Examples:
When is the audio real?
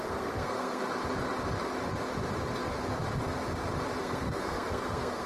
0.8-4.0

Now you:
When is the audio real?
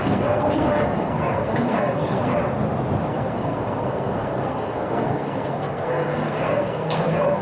2.4-3.1